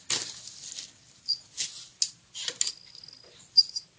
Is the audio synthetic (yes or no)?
no